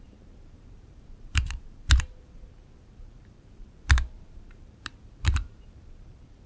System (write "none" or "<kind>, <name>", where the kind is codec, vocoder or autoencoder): vocoder, BigVGAN v2